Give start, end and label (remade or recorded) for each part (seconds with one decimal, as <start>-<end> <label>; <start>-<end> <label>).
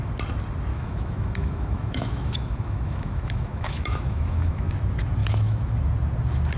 0.0-0.7 recorded; 0.7-4.7 remade; 4.7-5.2 recorded; 5.2-5.7 remade; 5.7-6.6 recorded